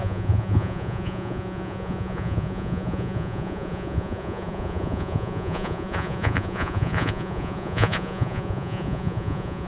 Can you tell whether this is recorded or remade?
remade